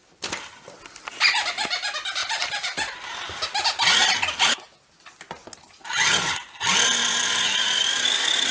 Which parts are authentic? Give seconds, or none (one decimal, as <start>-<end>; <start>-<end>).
1.5-2.2; 3.4-7.0; 7.8-8.5